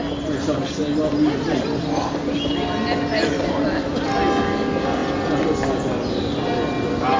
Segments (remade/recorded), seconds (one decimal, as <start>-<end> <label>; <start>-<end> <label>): 0.0-7.2 recorded